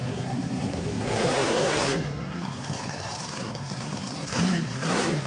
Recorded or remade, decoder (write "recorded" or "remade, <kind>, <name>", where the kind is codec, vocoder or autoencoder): remade, codec, SNAC